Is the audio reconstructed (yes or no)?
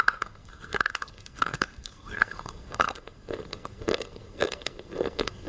yes